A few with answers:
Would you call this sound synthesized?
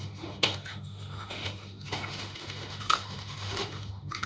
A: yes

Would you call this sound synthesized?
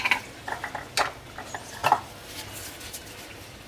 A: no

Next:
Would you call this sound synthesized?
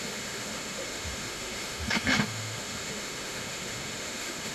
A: yes